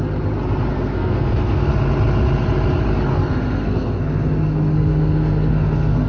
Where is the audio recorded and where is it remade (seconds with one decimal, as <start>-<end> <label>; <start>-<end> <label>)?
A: 0.0-0.7 recorded; 0.7-1.7 remade; 1.7-3.1 recorded; 3.1-6.1 remade